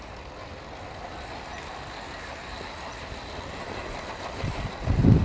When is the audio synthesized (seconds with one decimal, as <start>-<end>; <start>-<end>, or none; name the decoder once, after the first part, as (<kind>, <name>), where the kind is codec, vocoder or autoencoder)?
none